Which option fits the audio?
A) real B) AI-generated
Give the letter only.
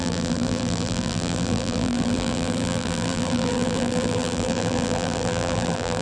B